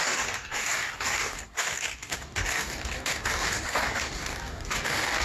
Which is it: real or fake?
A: fake